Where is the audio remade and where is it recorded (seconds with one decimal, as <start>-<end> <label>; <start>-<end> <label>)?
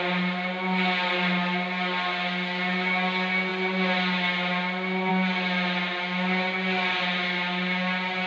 0.0-8.3 recorded